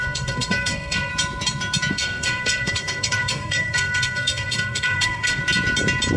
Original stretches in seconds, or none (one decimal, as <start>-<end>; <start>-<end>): 1.1-1.9; 5.4-6.2